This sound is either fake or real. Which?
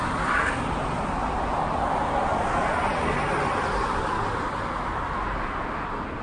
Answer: real